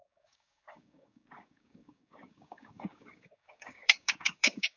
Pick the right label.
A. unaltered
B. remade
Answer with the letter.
B